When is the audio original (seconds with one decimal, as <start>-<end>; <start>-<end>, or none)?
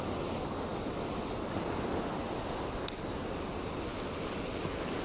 0.0-5.0